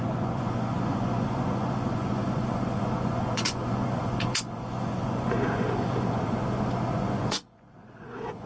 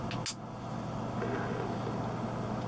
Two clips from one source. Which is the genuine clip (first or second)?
second